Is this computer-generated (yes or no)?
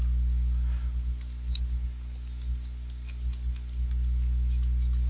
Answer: no